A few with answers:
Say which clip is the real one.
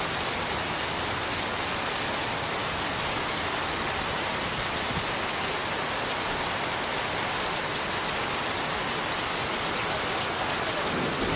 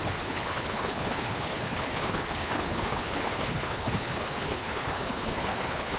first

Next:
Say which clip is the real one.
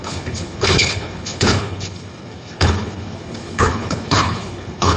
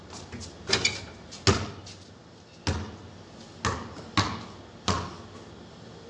second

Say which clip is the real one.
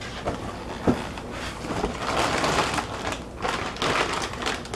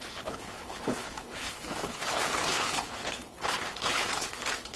first